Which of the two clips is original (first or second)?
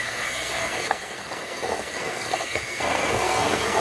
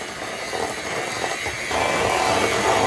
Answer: second